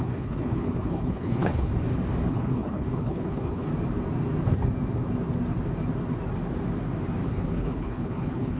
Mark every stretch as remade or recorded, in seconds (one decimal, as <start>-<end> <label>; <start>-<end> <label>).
0.0-1.7 remade; 1.7-2.3 recorded; 2.3-3.7 remade; 3.7-7.3 recorded; 7.3-8.6 remade